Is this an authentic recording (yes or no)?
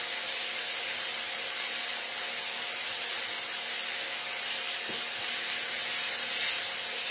yes